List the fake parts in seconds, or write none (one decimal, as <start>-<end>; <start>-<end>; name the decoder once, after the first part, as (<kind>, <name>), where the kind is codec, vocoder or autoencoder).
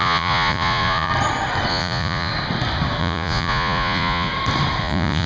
0.0-1.1 (vocoder, Vocos); 1.7-2.3; 3.0-4.3; 4.8-5.3